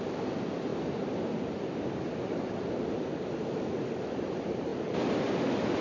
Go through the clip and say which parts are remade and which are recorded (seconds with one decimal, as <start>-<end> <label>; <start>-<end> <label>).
0.0-5.8 recorded